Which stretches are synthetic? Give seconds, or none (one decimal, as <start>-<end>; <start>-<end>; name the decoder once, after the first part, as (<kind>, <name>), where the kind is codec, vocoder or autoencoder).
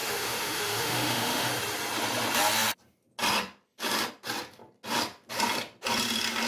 0.0-1.5 (autoencoder, DAC-VAE)